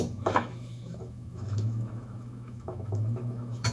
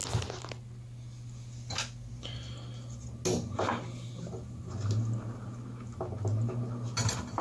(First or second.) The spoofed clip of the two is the first